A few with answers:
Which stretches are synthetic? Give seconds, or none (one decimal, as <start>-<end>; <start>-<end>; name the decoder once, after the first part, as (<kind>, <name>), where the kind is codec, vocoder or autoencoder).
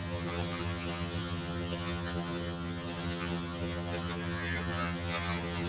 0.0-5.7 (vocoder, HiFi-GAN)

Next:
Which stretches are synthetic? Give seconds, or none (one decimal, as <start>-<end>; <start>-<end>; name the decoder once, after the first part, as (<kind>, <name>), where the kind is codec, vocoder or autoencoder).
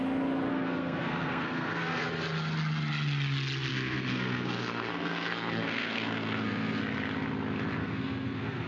0.5-2.1 (codec, SNAC); 3.7-6.8; 7.8-8.7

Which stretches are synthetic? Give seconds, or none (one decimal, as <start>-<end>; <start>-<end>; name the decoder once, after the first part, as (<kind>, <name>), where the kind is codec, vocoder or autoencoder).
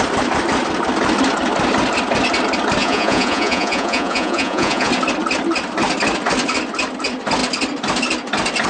2.8-4.9 (vocoder, Vocos)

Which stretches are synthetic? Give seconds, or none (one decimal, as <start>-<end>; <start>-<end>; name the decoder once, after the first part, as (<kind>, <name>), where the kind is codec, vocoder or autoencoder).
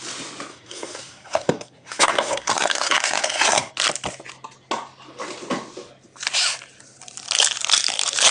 0.5-3.7 (codec, SNAC)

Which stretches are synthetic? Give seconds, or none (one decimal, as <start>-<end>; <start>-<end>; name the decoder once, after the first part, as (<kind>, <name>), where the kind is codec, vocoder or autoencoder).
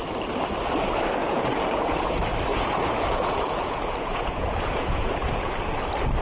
1.2-1.8 (vocoder, Vocos); 2.5-5.5